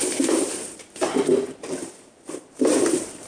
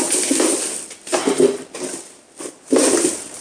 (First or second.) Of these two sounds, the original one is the second